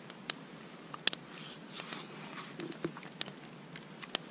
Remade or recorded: recorded